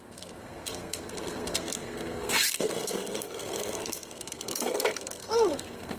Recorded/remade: remade